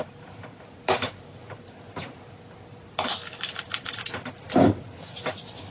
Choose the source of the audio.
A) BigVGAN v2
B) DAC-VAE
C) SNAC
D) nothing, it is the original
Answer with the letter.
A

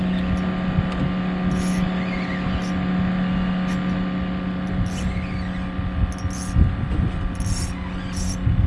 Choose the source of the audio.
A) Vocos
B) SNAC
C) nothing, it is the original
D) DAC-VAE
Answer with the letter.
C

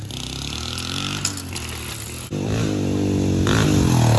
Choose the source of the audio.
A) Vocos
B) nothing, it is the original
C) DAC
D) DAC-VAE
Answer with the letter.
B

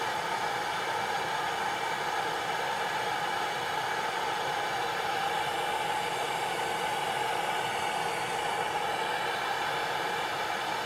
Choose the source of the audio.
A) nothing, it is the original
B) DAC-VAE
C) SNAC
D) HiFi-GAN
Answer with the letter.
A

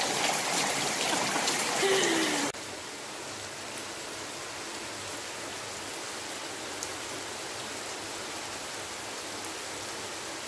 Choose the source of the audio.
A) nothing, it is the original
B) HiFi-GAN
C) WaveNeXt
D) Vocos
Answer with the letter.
A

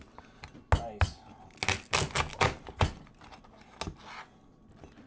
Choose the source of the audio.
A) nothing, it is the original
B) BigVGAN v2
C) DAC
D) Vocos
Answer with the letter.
A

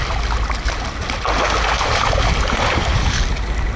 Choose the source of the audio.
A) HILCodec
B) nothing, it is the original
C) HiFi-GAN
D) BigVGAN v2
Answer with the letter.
B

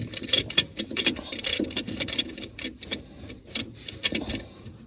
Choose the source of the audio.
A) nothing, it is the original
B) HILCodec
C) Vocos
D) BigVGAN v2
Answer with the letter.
D